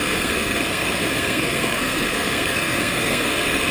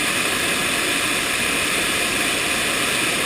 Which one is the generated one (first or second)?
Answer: first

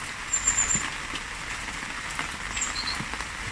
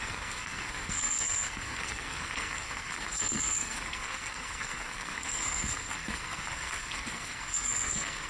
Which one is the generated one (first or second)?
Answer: second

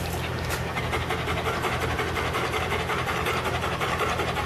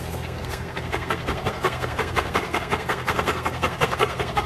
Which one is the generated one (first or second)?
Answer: second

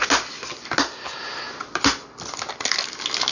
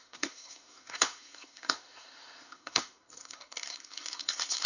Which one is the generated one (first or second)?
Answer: second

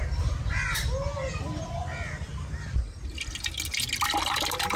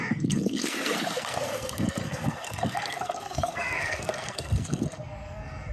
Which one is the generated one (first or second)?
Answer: second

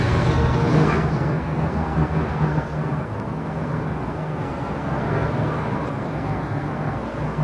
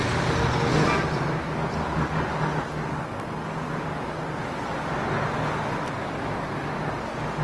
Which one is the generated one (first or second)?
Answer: first